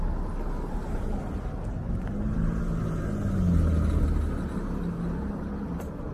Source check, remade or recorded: recorded